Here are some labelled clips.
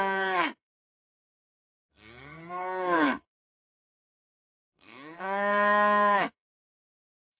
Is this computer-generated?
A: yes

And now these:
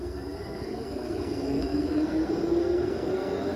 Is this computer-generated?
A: yes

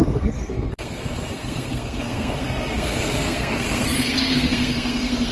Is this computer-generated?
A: yes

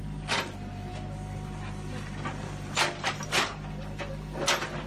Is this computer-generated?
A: no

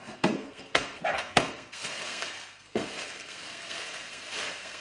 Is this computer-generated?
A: yes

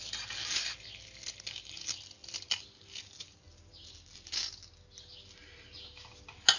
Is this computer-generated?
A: no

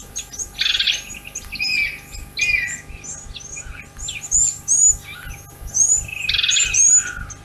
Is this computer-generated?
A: no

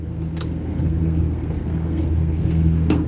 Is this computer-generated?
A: yes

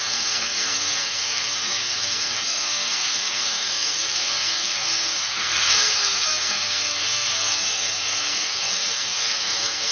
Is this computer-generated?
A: yes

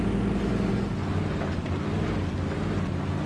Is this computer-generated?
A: no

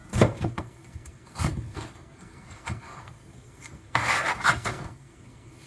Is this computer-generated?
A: yes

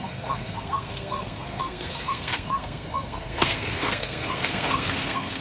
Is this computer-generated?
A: yes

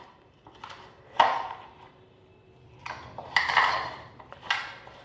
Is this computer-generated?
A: no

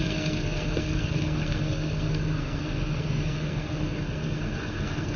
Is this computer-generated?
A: yes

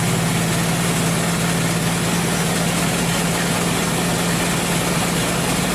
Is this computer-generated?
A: no